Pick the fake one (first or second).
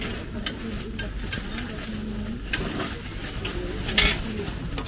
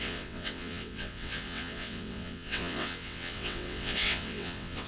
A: second